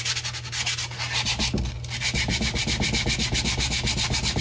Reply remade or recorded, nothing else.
recorded